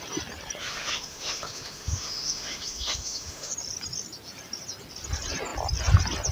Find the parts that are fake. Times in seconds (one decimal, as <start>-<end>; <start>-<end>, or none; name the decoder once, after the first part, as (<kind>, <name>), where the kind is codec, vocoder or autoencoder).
0.6-3.5 (autoencoder, DAC-VAE)